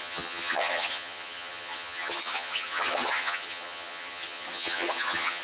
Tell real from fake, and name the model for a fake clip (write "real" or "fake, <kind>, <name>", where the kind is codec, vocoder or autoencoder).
fake, vocoder, HiFi-GAN